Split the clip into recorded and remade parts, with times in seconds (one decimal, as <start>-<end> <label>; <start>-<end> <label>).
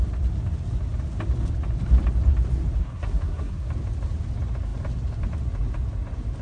0.0-2.8 recorded; 2.8-3.7 remade; 3.7-6.4 recorded